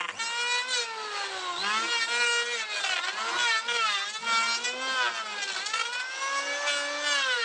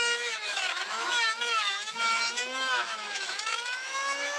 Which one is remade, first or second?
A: second